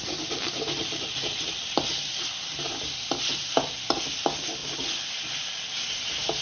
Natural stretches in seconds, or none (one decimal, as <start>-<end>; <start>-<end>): 4.6-6.4